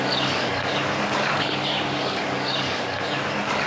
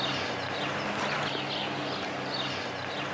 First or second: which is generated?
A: first